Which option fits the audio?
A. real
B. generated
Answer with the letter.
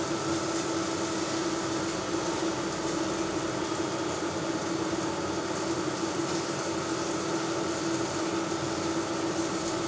A